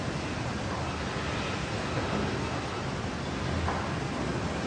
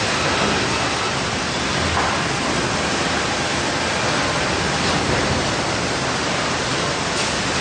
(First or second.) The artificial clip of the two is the second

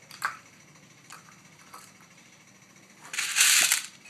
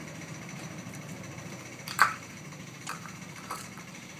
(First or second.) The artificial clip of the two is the second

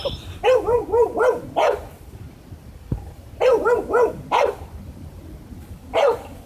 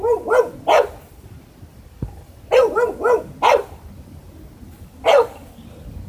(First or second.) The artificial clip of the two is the first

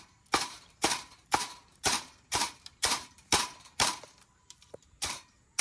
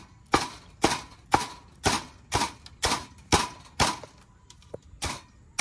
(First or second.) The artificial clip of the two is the first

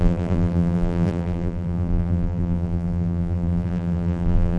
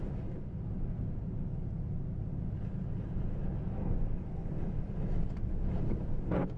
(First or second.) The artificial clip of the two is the first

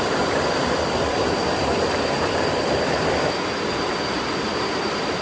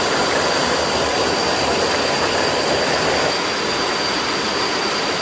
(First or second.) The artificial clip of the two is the first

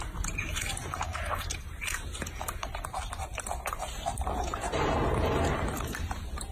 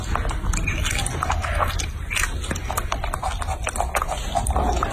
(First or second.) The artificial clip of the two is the first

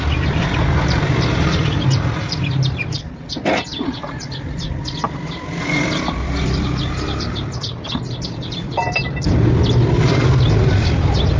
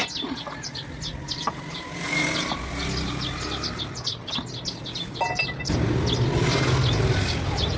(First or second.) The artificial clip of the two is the first